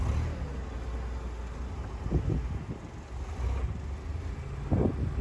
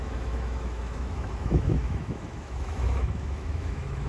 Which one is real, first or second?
first